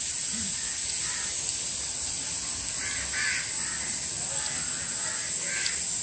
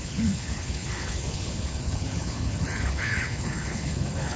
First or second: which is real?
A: first